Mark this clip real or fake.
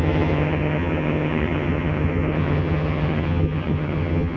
fake